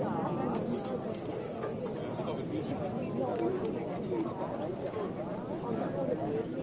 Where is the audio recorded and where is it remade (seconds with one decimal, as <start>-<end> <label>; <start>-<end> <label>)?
0.0-3.3 recorded; 3.3-4.0 remade; 4.0-6.6 recorded